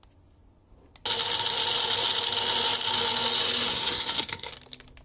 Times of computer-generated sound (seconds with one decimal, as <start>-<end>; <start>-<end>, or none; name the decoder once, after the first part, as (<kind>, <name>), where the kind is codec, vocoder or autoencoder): 3.7-4.5 (codec, SNAC)